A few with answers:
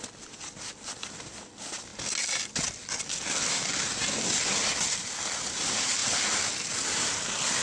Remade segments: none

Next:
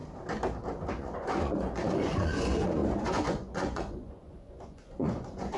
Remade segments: 1.0-5.6

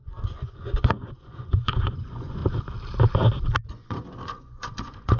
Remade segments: 0.0-2.4; 3.7-5.2

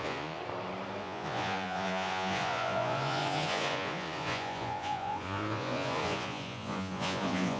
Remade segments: 0.0-0.4; 1.0-7.6

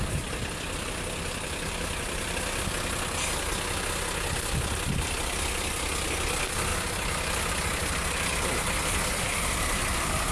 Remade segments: none

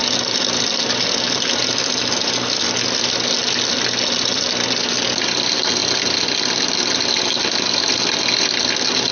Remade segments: none

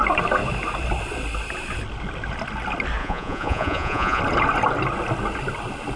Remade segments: 3.0-4.2

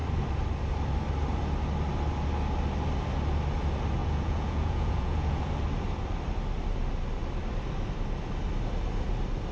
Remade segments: 4.0-5.5